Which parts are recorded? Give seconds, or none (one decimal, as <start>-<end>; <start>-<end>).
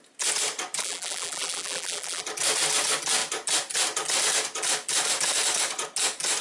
0.0-0.8; 2.2-6.4